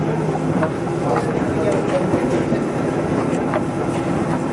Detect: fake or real real